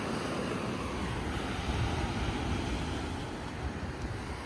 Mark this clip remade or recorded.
recorded